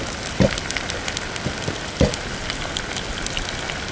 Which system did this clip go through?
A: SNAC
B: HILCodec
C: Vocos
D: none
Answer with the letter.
D